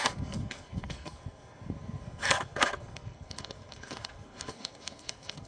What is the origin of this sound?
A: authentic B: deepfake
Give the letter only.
B